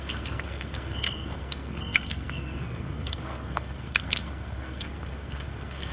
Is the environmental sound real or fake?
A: fake